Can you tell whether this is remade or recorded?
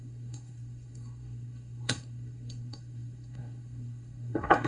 remade